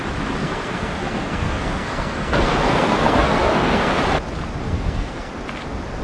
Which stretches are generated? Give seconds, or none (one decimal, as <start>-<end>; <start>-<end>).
0.4-4.0; 4.6-5.3